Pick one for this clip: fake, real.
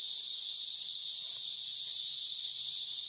real